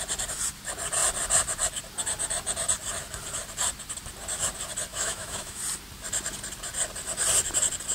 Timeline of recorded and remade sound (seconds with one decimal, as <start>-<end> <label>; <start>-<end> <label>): 0.0-4.9 recorded; 4.9-5.6 remade; 5.6-7.9 recorded